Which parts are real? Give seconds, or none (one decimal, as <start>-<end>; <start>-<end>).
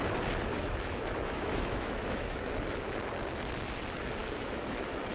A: 0.0-0.5; 2.5-4.2